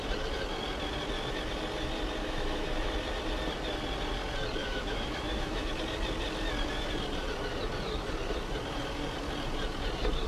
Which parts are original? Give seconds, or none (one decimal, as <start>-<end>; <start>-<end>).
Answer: 0.0-2.2; 2.9-4.6; 5.7-10.3